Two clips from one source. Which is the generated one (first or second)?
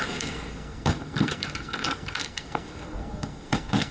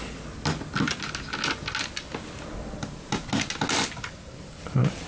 first